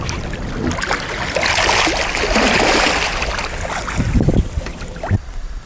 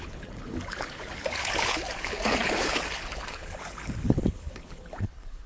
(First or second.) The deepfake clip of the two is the second